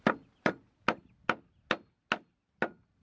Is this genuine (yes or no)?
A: yes